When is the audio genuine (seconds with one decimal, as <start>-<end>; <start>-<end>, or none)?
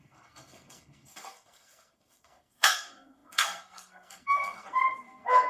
none